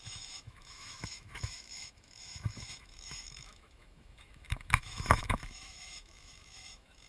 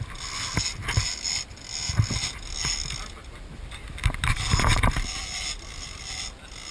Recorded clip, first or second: second